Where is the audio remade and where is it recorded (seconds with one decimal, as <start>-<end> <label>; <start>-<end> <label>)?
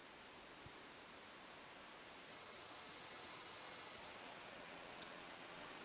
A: 0.0-2.3 recorded; 2.3-5.8 remade